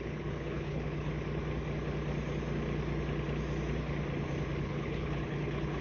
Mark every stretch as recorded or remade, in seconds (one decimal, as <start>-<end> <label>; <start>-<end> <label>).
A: 0.0-1.1 remade; 1.1-4.6 recorded; 4.6-5.8 remade